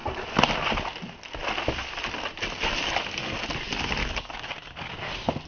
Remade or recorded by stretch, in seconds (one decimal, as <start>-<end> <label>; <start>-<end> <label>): 0.0-4.0 recorded; 4.0-4.9 remade; 4.9-5.5 recorded